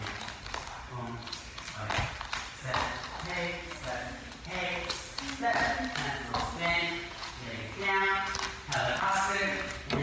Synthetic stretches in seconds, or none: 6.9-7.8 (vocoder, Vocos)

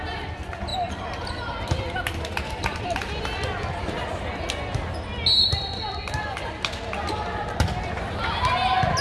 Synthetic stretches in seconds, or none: none

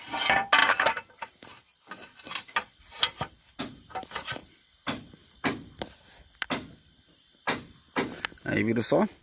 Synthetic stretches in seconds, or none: none